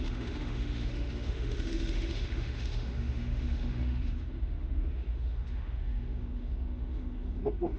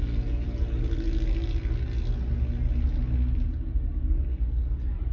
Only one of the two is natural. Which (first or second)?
second